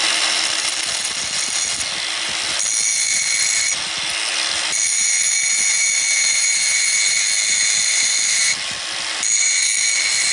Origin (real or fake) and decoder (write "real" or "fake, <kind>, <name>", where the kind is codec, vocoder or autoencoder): real